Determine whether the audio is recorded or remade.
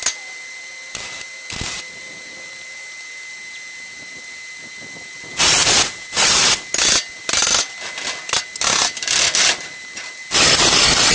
recorded